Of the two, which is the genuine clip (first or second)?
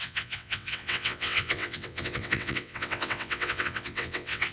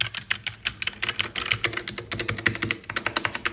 second